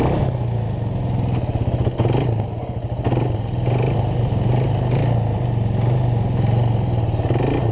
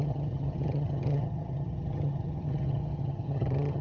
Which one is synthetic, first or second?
second